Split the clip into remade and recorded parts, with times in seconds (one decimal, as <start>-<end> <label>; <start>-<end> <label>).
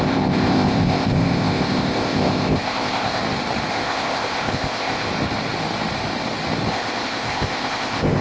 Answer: 0.0-3.2 remade; 3.2-3.7 recorded; 3.7-5.1 remade; 5.1-6.7 recorded; 6.7-8.2 remade